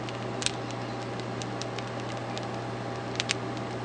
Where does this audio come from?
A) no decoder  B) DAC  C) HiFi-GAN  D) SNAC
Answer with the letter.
A